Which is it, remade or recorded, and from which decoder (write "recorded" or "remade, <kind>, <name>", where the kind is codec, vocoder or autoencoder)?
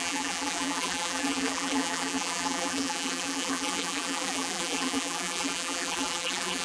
remade, vocoder, BigVGAN v2